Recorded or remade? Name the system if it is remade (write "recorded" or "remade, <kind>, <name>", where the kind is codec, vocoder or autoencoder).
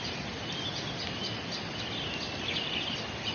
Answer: recorded